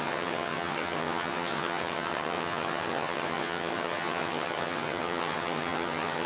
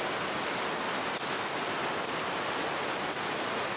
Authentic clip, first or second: second